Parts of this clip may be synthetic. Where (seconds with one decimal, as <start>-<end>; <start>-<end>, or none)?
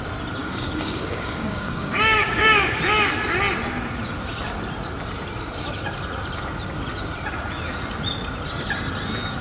0.4-2.8